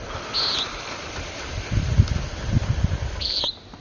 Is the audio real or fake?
real